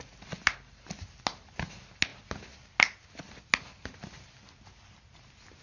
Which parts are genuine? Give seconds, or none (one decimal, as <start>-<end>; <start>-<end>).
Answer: 0.0-5.6